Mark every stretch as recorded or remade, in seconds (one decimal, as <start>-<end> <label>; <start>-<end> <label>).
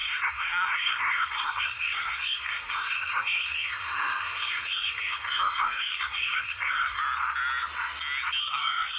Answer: 0.0-7.0 remade; 7.0-8.4 recorded; 8.4-9.0 remade